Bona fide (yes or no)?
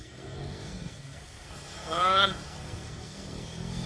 no